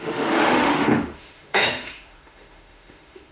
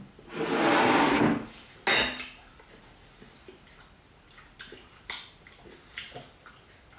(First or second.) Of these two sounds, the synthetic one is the first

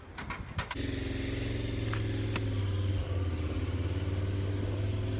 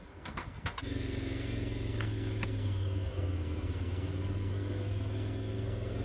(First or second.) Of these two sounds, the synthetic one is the second